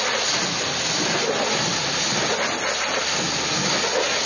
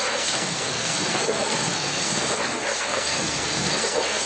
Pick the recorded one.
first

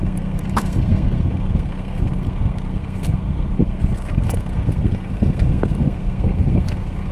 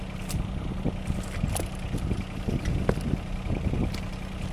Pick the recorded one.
second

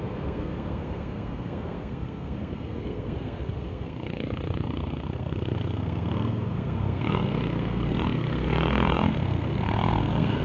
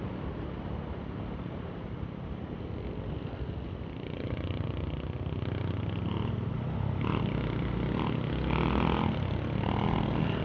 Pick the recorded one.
second